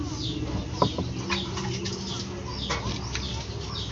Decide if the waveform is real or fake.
real